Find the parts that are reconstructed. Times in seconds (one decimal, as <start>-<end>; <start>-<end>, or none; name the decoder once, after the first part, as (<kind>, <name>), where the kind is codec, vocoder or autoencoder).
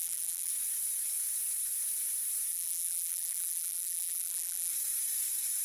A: 0.0-0.5 (vocoder, BigVGAN v2); 2.5-4.7